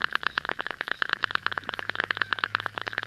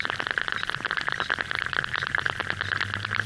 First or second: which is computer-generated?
first